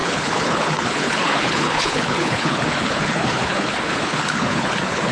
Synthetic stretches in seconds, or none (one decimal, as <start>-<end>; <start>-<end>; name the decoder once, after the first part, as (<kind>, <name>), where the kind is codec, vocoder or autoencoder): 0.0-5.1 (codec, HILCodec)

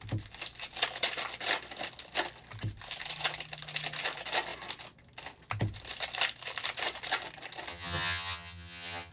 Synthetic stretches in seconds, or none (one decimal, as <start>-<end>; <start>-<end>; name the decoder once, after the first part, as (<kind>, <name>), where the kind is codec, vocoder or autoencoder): 7.7-9.1 (vocoder, HiFi-GAN)

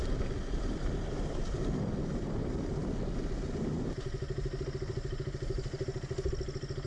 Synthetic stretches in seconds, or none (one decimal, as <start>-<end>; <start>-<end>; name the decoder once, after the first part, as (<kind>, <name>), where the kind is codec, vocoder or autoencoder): none